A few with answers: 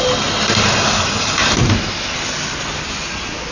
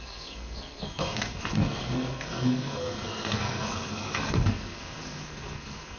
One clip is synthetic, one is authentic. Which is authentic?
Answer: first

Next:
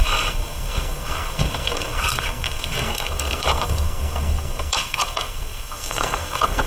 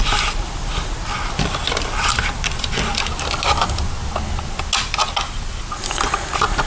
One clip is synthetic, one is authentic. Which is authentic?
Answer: second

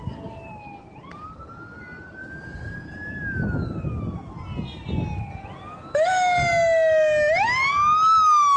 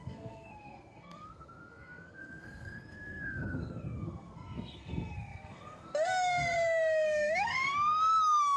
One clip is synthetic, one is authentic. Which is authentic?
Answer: first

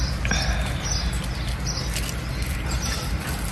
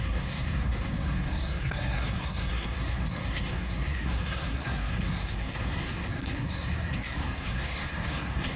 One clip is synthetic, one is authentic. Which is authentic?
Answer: first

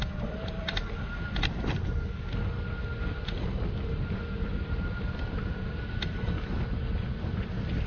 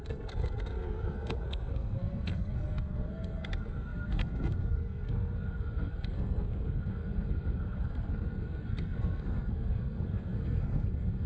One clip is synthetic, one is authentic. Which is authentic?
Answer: first